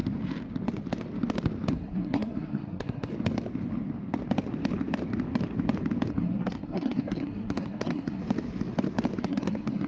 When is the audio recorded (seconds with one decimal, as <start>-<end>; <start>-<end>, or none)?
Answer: 0.0-1.7; 3.1-6.1; 8.2-9.2